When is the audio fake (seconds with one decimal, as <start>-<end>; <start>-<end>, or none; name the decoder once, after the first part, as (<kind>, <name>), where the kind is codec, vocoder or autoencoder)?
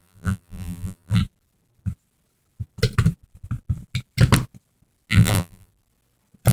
0.0-1.2 (vocoder, BigVGAN v2); 5.1-5.7